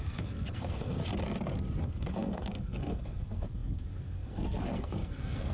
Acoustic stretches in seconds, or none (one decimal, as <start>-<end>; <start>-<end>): 1.0-1.8